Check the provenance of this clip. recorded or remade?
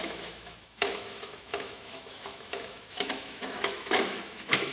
remade